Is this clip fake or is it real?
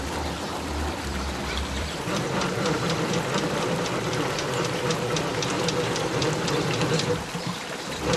fake